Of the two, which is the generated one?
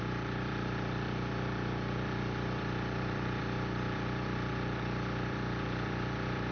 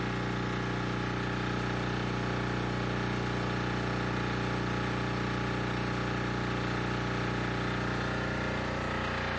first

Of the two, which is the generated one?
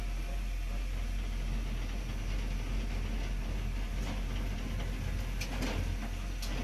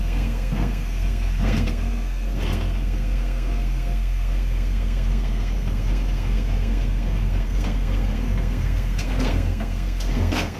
second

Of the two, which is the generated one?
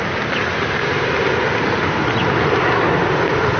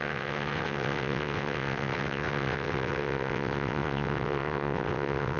second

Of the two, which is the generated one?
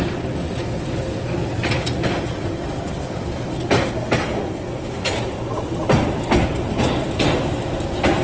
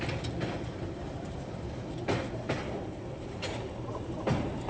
second